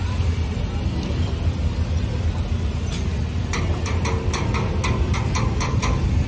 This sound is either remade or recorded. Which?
recorded